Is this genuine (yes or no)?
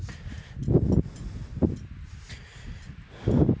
yes